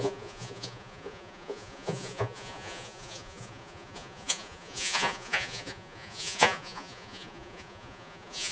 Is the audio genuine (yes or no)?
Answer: no